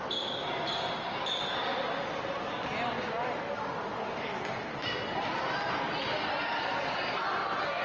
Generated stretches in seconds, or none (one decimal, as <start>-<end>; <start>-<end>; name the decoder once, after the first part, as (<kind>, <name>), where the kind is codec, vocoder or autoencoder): none